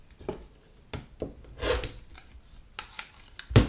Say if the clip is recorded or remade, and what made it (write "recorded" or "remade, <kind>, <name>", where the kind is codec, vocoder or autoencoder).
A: recorded